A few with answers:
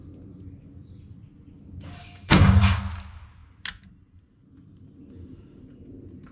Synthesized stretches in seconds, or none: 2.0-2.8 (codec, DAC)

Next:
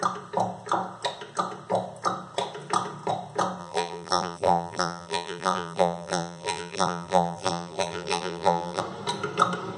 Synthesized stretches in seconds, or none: 3.6-8.8 (vocoder, BigVGAN v2)

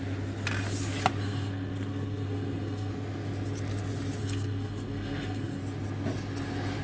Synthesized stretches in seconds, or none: 1.2-2.9 (codec, SNAC); 4.2-5.6

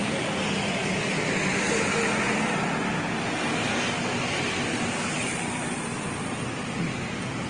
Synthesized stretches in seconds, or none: none

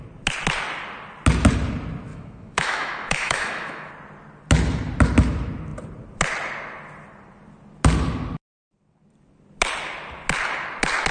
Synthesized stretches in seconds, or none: 2.1-3.9 (autoencoder, DAC-VAE)